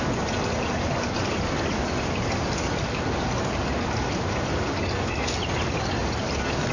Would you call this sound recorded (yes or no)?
yes